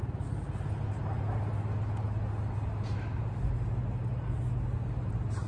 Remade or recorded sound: recorded